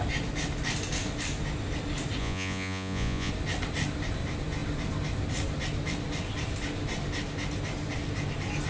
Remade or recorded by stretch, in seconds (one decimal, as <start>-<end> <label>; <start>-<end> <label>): 0.0-2.2 recorded; 2.2-3.3 remade; 3.3-8.7 recorded